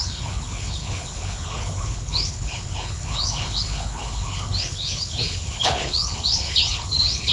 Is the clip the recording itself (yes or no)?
no